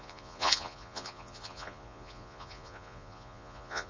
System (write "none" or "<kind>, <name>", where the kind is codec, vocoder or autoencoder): vocoder, Vocos